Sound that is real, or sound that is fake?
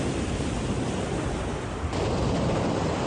real